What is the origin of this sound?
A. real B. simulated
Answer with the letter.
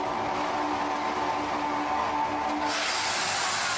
A